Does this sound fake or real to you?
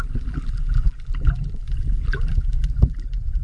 fake